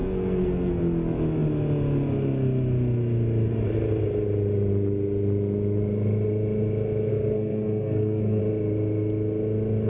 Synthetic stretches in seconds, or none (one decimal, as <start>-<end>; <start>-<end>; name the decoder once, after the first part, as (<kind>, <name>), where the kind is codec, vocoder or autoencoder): 0.0-0.8 (codec, SNAC); 7.1-8.4